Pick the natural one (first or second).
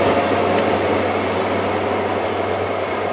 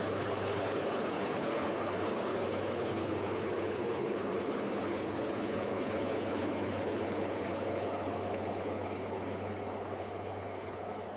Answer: first